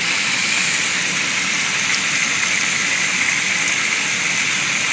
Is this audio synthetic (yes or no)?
no